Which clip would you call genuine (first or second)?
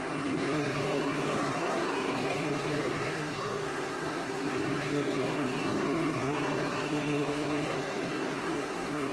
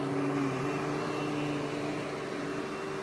second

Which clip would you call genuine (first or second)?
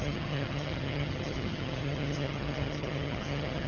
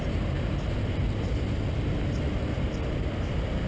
second